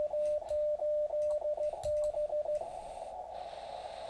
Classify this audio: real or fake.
real